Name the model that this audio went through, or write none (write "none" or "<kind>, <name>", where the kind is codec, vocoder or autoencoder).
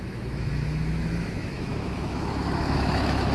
autoencoder, DAC-VAE